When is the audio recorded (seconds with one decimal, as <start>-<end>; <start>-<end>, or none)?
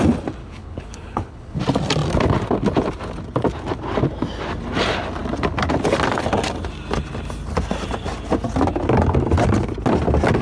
0.0-0.4; 1.6-10.4